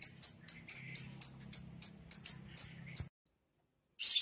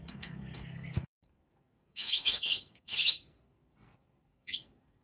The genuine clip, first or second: first